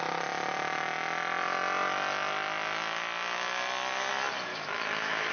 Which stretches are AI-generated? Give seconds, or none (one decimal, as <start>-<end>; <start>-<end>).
4.5-5.3